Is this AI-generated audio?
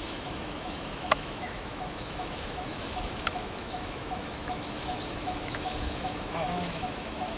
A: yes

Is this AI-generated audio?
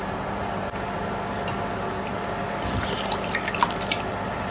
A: no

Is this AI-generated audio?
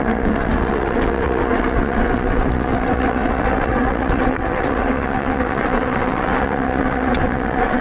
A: yes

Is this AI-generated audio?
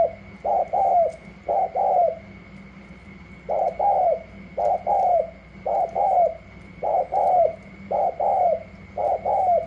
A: no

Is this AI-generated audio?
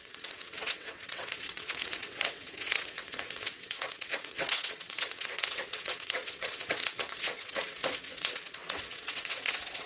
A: yes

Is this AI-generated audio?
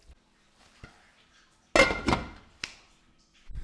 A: no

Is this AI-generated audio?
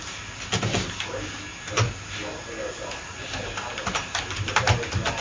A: no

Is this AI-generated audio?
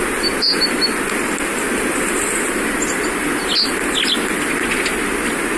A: no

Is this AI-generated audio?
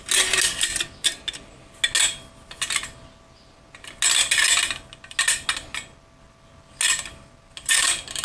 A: no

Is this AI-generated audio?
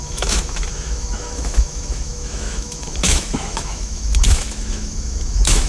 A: yes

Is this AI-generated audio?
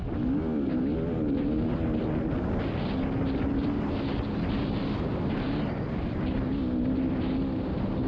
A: no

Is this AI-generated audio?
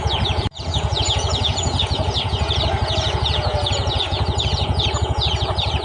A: yes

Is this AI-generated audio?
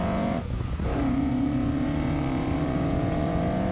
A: yes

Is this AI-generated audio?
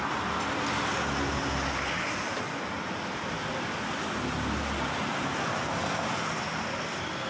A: no